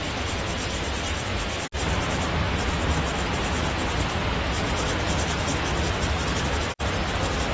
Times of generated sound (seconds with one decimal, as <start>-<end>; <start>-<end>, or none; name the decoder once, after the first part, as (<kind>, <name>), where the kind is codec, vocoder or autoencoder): none